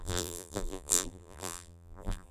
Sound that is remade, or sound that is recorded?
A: remade